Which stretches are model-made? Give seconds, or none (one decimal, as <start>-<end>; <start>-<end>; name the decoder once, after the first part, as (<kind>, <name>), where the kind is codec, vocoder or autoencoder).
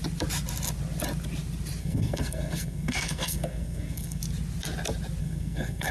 1.8-4.2 (codec, SNAC); 5.2-5.9